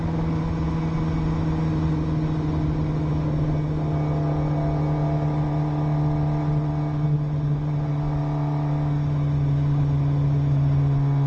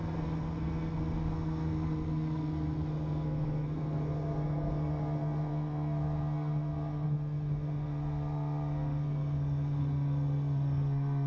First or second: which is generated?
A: second